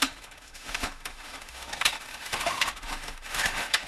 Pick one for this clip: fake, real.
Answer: fake